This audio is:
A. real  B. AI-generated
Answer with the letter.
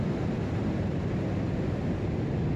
A